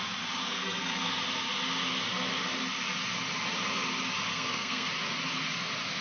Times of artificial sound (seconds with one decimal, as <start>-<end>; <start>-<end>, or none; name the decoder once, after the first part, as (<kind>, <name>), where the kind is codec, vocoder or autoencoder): 0.4-1.1 (codec, SNAC); 4.3-4.9